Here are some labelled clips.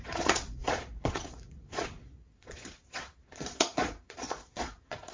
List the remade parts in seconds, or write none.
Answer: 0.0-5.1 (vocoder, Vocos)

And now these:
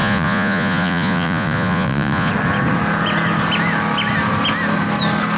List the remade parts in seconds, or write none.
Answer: 0.0-2.3 (vocoder, Vocos)

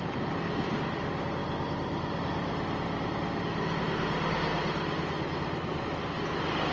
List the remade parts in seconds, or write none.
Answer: none

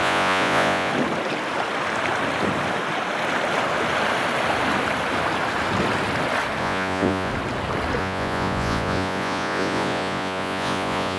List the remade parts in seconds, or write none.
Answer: 0.0-0.9 (vocoder, Vocos); 6.6-7.3; 8.0-11.2

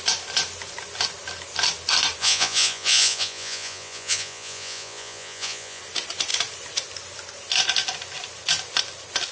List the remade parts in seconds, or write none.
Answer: 2.2-5.8 (vocoder, Vocos)